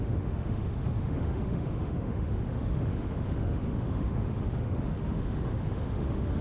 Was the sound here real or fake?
fake